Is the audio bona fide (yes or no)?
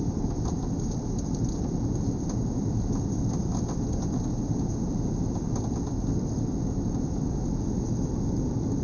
yes